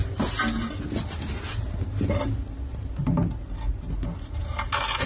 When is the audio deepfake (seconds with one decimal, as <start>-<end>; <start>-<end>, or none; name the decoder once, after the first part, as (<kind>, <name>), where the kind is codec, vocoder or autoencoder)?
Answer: 0.0-0.8 (vocoder, BigVGAN v2)

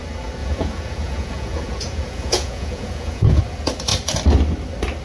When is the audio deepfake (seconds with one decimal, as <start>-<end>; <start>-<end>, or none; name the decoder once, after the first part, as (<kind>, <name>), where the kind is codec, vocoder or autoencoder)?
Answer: 0.4-3.4 (vocoder, Vocos)